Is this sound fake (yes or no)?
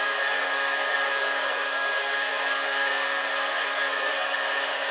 yes